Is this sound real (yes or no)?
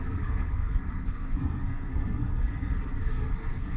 no